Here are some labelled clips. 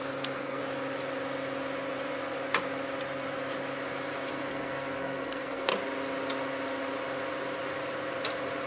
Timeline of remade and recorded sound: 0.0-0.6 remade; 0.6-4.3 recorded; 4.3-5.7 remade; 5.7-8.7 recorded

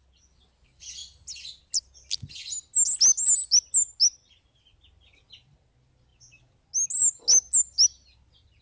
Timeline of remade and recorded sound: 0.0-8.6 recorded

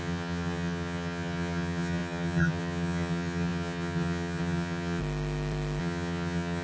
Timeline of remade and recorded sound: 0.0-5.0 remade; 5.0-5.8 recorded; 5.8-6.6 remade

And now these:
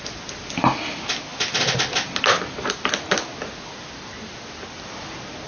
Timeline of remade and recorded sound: 0.0-5.5 recorded

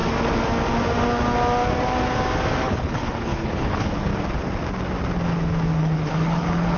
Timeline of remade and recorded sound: 0.0-2.6 recorded; 2.6-4.1 remade; 4.1-5.8 recorded; 5.8-6.8 remade